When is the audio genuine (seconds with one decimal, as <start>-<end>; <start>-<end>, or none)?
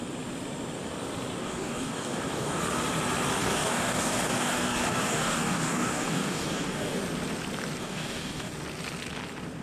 0.0-1.4; 2.6-3.4; 7.0-7.8; 8.5-9.6